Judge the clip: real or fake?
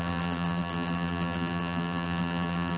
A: fake